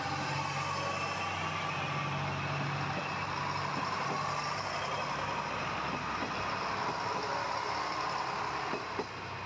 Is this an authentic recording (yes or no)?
yes